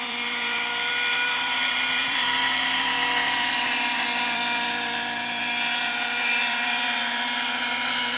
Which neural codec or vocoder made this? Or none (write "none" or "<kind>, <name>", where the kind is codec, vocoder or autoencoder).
vocoder, BigVGAN v2